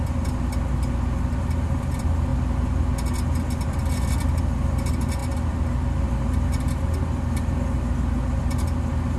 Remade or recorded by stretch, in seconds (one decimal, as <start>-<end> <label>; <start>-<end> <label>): 0.0-9.2 recorded